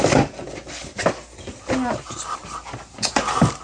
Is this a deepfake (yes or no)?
no